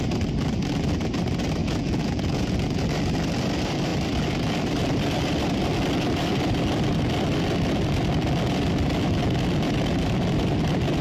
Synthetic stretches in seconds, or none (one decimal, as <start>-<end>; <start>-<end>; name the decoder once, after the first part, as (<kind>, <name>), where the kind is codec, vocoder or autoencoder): 1.6-2.8 (vocoder, Vocos)